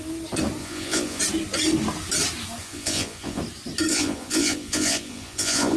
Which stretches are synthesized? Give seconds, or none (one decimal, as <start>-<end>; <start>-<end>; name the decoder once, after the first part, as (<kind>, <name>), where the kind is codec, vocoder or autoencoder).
0.6-1.2 (vocoder, Vocos); 2.6-3.4; 3.9-5.8